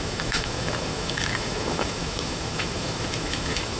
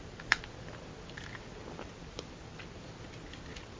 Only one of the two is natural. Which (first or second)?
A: second